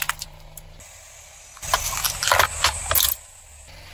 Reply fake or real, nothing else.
real